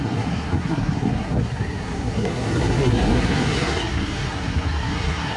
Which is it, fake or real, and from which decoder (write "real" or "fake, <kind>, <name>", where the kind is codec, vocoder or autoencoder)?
fake, codec, SNAC